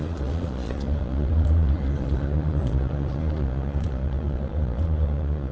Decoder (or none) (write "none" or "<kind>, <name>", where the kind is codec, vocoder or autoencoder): vocoder, Vocos